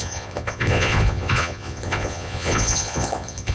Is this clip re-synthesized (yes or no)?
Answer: yes